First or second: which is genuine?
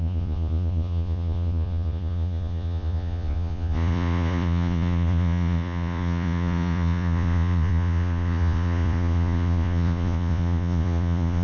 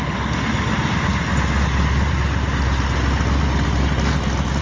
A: second